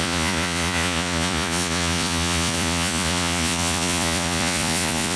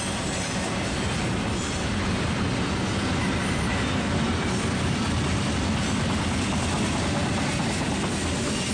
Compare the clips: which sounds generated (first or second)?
first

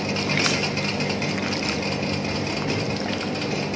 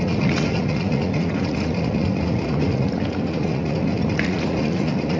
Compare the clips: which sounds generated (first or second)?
second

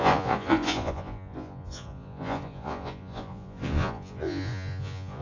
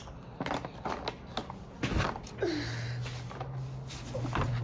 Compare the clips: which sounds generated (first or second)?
first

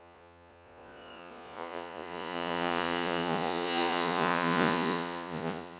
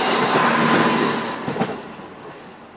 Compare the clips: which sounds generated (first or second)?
first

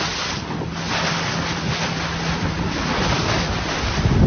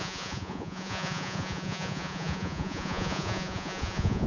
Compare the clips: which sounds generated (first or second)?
second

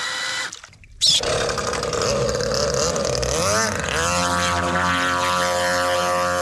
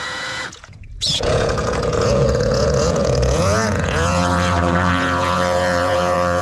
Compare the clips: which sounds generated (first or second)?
second